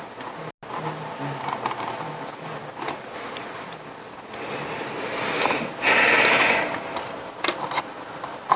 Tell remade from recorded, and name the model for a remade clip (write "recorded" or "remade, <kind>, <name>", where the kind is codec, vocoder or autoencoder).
recorded